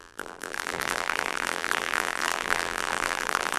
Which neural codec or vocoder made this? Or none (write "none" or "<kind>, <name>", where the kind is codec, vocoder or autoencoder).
vocoder, BigVGAN v2